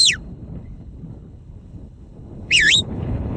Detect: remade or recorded remade